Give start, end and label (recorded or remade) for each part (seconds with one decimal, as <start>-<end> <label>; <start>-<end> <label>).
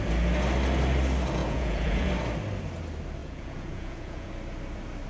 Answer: 0.0-1.4 recorded; 1.4-2.1 remade; 2.1-3.2 recorded; 3.2-4.3 remade; 4.3-5.1 recorded